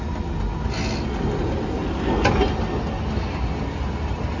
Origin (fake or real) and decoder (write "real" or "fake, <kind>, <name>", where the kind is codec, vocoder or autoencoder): real